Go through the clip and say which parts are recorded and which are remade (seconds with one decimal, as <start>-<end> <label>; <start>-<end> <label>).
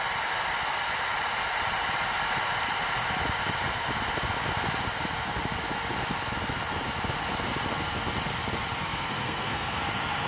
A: 0.0-8.8 recorded; 8.8-9.8 remade; 9.8-10.3 recorded